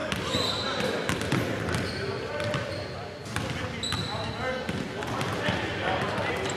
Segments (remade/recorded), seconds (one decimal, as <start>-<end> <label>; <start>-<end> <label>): 0.0-6.6 recorded